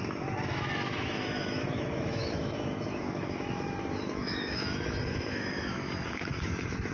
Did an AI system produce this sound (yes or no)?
yes